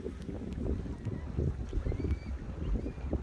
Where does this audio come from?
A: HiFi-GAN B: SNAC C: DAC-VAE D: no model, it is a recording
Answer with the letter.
D